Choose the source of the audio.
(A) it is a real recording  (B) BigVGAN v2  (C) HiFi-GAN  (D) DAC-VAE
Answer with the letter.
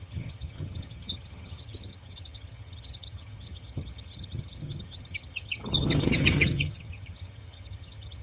C